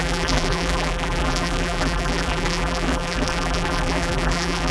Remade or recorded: remade